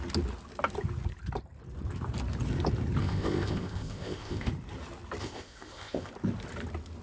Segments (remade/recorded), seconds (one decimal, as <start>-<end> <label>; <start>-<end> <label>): 0.0-3.0 recorded; 3.0-4.5 remade; 4.5-5.2 recorded; 5.2-6.1 remade; 6.1-7.0 recorded